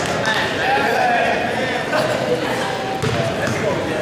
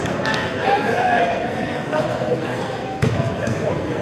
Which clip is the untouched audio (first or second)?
first